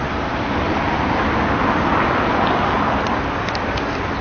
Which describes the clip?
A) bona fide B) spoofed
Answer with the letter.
A